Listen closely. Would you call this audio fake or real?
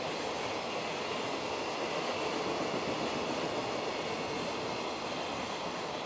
real